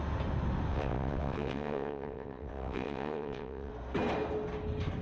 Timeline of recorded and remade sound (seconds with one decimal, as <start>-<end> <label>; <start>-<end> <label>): 0.0-0.7 recorded; 0.7-3.7 remade; 3.7-5.0 recorded